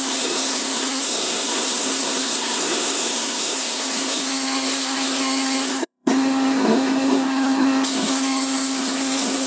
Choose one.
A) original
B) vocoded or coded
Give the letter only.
B